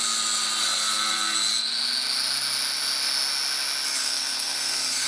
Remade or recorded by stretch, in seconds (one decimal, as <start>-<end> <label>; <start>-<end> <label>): 0.0-4.0 recorded; 4.0-5.1 remade